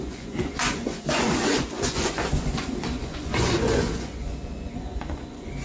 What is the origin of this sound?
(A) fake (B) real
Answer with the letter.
A